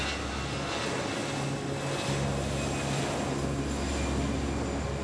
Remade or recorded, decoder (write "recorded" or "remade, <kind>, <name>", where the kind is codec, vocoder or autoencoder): recorded